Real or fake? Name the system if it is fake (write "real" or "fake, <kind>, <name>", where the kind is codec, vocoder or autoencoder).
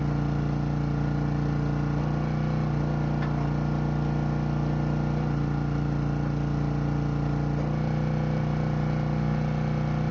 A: real